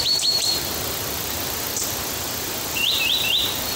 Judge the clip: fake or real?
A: fake